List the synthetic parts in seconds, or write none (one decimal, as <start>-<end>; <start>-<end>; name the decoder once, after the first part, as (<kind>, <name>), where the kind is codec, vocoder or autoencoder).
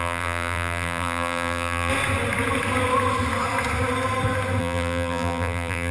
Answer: 0.0-1.9 (vocoder, BigVGAN v2); 4.6-5.9